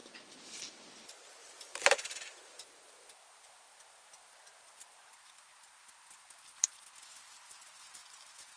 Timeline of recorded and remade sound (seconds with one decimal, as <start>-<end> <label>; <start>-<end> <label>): 0.0-0.9 remade; 0.9-1.4 recorded; 1.4-2.5 remade; 2.5-8.6 recorded